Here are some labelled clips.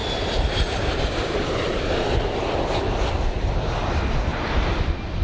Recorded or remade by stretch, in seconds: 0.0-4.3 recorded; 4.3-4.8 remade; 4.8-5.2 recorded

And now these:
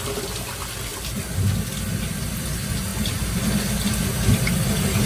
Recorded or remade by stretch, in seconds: 0.0-5.1 recorded

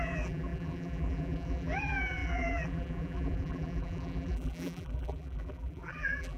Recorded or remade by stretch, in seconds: 0.0-6.4 remade

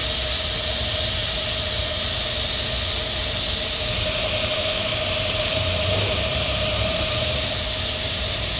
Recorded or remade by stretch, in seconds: 0.0-4.9 recorded; 4.9-5.6 remade; 5.6-6.3 recorded; 6.3-8.2 remade; 8.2-8.6 recorded

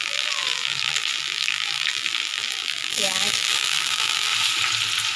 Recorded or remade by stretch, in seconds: 0.0-4.3 remade; 4.3-5.2 recorded